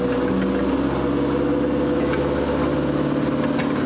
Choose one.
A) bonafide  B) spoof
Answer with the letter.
A